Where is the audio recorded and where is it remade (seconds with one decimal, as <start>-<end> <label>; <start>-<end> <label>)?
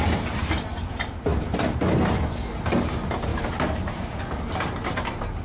0.0-0.6 remade; 0.6-3.3 recorded; 3.3-4.2 remade; 4.2-5.4 recorded